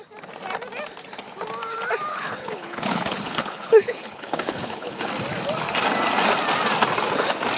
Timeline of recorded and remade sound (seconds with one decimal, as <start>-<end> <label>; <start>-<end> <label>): 0.0-2.1 recorded; 2.1-5.1 remade; 5.1-7.6 recorded